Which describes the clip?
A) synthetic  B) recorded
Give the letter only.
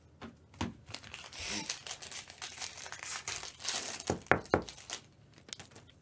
B